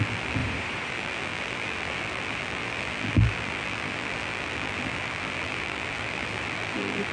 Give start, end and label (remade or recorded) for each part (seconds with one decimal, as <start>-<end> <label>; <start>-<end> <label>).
0.0-0.4 remade; 0.4-0.9 recorded; 0.9-7.1 remade